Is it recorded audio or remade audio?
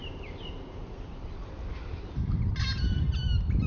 recorded